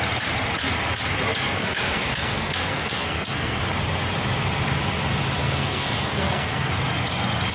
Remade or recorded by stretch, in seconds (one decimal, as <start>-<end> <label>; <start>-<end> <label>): 0.0-1.3 recorded; 1.3-3.6 remade; 3.6-5.4 recorded; 5.4-6.7 remade; 6.7-7.5 recorded